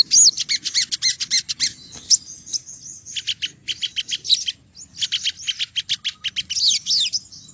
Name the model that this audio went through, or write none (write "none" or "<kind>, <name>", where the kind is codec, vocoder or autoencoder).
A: none